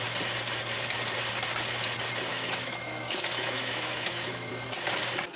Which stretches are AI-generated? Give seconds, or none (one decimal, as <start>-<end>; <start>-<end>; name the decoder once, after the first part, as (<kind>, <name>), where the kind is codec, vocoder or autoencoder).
2.3-4.5 (autoencoder, DAC-VAE)